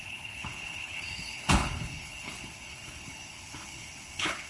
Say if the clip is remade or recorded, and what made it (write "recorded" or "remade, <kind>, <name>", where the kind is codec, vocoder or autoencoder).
remade, codec, HILCodec